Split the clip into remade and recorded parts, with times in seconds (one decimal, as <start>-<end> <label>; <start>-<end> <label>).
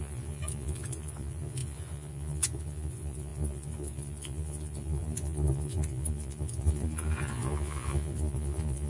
0.0-8.9 remade